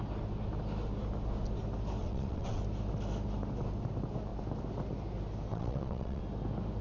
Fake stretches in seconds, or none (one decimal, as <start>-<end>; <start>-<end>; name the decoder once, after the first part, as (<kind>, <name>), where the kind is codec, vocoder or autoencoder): 2.0-2.6 (vocoder, WaveNeXt); 5.5-6.2